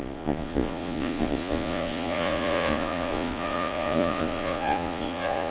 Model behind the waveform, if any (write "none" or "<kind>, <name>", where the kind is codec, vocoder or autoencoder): vocoder, Vocos